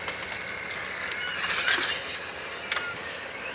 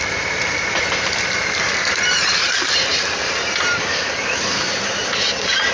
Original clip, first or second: first